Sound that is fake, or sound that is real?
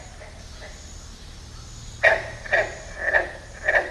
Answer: real